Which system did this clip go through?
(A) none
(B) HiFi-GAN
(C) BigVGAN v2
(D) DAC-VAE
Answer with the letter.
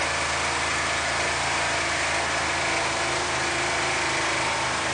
C